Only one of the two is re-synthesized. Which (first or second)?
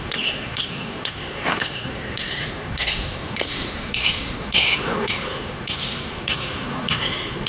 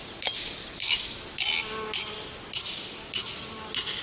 first